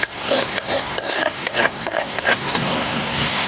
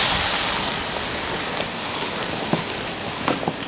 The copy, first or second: first